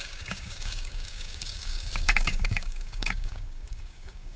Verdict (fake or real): fake